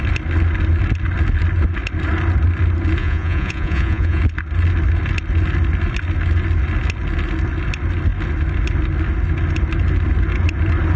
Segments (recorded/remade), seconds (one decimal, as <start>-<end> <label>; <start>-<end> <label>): 0.0-3.0 recorded; 3.0-4.2 remade; 4.2-11.0 recorded